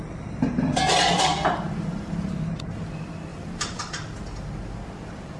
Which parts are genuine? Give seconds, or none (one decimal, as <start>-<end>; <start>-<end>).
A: 0.0-1.3; 2.3-3.3; 3.8-5.4